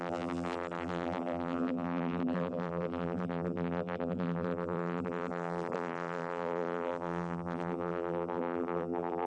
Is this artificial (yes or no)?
yes